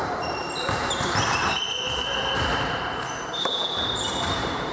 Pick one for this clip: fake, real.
fake